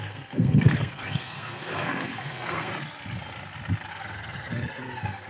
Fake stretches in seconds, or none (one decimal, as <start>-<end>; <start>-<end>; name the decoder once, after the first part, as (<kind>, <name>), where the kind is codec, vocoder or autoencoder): 0.0-2.7 (codec, SNAC); 3.9-5.3